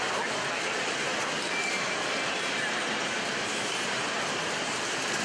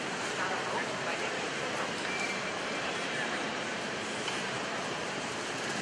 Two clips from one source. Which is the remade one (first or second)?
second